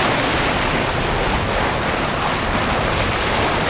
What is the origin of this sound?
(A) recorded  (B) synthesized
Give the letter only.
A